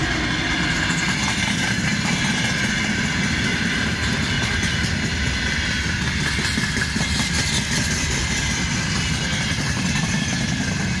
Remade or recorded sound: recorded